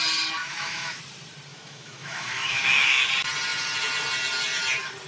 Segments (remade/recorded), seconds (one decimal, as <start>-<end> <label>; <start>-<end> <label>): 0.0-0.4 recorded; 0.4-1.0 remade; 1.0-1.5 recorded; 1.5-3.1 remade; 3.1-5.1 recorded